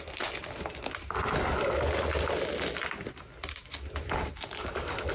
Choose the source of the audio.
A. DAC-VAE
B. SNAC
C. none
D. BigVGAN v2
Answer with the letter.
C